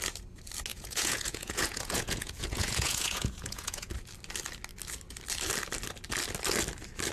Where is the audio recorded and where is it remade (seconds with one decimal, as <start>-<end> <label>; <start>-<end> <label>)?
0.0-0.7 recorded; 0.7-3.9 remade; 3.9-7.1 recorded